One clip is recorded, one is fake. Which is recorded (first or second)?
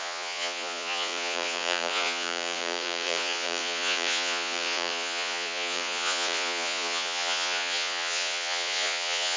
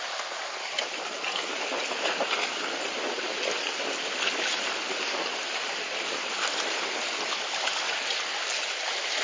second